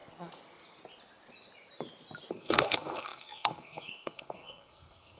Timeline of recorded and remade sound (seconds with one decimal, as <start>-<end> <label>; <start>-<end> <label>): 0.0-2.3 recorded; 2.3-5.2 remade